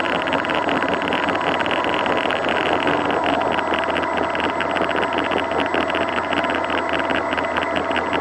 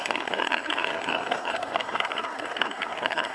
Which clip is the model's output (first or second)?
second